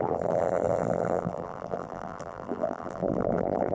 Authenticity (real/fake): fake